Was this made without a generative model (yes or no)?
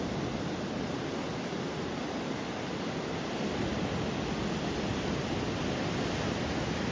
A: yes